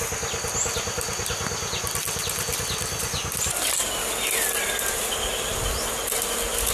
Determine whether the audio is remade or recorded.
recorded